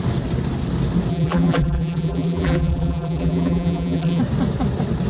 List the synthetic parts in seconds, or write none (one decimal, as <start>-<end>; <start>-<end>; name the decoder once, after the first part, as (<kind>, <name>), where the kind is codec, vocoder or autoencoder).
1.1-4.2 (vocoder, BigVGAN v2)